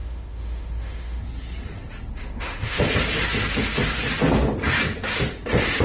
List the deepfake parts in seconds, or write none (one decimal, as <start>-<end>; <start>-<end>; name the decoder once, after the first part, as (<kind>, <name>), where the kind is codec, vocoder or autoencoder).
0.0-1.2 (autoencoder, DAC-VAE); 2.2-2.8